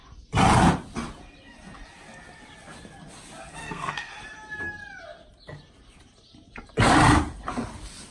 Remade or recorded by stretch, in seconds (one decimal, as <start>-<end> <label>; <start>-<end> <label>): 0.0-3.6 recorded; 3.6-4.1 remade; 4.1-8.1 recorded